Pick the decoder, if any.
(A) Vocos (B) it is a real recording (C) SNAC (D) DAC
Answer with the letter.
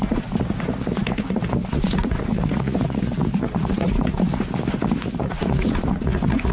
A